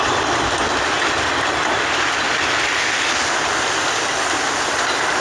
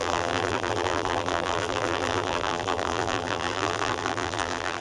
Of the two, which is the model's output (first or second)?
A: second